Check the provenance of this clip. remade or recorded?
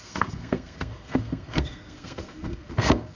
remade